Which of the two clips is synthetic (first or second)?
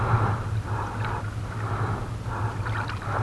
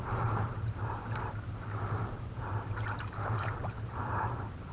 second